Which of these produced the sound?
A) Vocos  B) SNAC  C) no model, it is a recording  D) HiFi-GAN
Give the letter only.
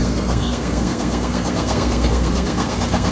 B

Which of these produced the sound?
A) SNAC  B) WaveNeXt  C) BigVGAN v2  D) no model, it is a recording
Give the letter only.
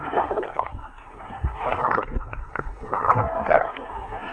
A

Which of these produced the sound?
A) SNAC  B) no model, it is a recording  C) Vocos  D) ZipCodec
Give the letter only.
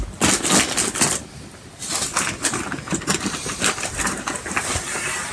B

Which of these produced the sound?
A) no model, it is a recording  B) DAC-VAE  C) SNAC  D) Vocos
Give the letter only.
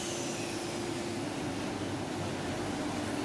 A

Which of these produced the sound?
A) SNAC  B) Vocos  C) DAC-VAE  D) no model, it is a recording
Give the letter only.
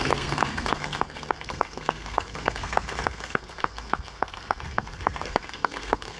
A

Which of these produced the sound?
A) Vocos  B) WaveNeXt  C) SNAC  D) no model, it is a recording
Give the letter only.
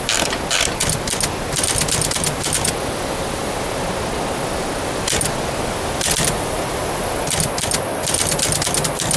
D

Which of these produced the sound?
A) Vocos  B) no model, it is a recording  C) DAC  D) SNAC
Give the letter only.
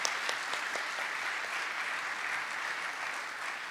B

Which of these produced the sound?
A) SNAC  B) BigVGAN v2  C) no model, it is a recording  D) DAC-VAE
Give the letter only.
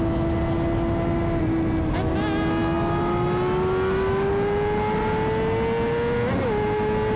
C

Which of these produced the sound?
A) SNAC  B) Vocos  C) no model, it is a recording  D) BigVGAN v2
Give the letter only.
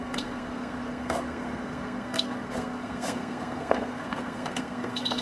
A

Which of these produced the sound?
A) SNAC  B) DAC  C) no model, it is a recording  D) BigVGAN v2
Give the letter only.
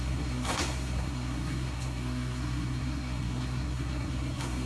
A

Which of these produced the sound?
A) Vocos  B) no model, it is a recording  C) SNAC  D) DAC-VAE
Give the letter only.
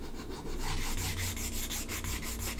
B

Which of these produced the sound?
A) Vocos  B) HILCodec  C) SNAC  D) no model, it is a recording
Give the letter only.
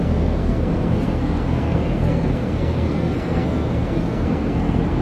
C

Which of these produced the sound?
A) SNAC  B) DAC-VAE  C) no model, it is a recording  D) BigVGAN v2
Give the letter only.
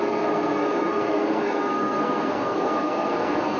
A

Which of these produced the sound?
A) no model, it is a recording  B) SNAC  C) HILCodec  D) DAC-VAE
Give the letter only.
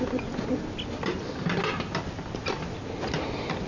A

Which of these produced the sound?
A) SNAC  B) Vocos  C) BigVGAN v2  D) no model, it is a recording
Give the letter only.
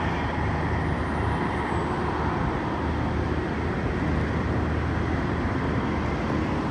D